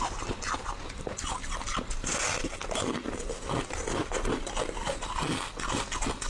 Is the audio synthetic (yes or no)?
no